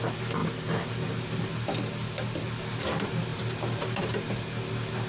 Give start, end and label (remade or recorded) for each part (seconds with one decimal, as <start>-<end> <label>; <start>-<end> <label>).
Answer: 0.0-5.1 recorded